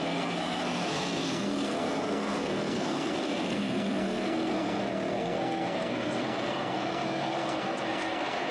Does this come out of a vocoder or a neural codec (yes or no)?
yes